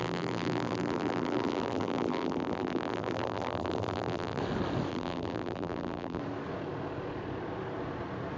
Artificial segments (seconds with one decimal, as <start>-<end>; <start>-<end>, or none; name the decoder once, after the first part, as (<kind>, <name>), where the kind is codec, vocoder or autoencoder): 0.0-4.4 (vocoder, BigVGAN v2); 4.9-6.2